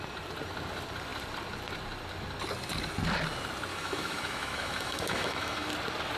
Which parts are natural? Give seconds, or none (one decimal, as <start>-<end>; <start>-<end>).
0.0-3.7; 5.7-6.2